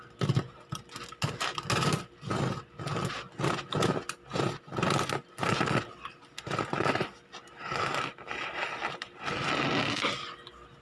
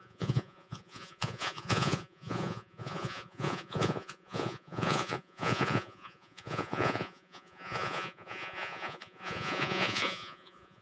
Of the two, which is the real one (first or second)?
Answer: first